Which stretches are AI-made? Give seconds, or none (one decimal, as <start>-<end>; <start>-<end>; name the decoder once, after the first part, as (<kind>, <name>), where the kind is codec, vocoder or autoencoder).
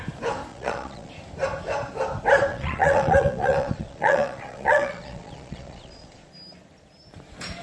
0.5-1.1 (vocoder, Vocos); 2.5-6.3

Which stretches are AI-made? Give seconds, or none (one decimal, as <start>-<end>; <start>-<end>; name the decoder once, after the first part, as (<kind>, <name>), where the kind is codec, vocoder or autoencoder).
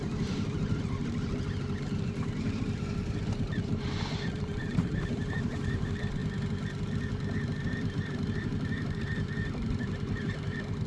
0.0-6.2 (vocoder, BigVGAN v2); 7.3-10.9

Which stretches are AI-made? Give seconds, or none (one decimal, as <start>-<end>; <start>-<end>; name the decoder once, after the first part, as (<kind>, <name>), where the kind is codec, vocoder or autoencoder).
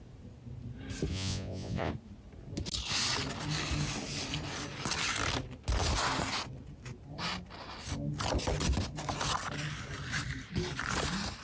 1.1-1.9 (vocoder, Vocos)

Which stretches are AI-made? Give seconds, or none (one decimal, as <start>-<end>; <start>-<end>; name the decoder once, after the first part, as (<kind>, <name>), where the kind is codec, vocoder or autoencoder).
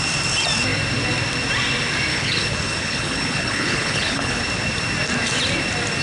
2.1-4.4 (codec, HILCodec)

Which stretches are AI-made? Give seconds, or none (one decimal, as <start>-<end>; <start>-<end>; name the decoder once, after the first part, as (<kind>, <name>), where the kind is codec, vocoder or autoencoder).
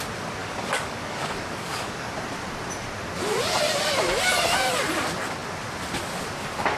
0.4-2.1 (codec, DAC)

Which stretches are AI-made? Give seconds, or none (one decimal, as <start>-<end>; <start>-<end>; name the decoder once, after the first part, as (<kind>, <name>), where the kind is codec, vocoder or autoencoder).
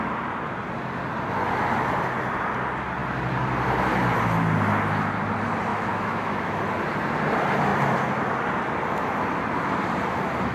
5.7-6.6 (autoencoder, DAC-VAE)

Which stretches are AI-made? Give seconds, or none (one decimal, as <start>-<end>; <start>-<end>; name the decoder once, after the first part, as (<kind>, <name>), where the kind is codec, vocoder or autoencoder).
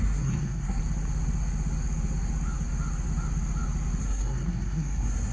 0.0-0.8 (codec, SNAC); 4.0-5.3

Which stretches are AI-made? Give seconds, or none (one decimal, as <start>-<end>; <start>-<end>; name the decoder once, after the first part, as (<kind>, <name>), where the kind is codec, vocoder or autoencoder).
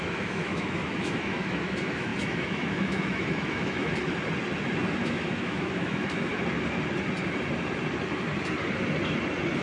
0.0-3.9 (autoencoder, DAC-VAE); 5.0-6.3